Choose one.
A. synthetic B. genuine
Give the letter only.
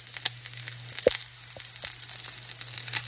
B